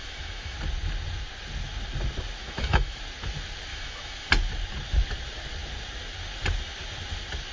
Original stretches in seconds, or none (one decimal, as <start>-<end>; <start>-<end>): 0.6-2.4; 3.0-3.7; 4.3-7.5